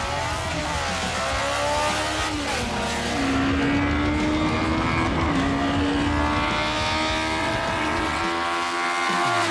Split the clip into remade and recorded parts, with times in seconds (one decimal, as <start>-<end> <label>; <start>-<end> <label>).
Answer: 0.0-7.4 recorded; 7.4-8.2 remade; 8.2-9.5 recorded

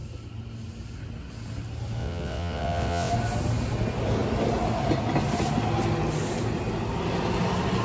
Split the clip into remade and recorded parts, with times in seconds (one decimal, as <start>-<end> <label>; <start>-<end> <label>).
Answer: 0.0-2.0 recorded; 2.0-3.1 remade; 3.1-7.8 recorded

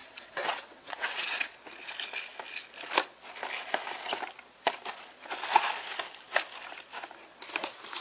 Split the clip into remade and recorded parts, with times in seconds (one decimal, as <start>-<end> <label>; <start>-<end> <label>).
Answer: 0.0-1.5 remade; 1.5-8.0 recorded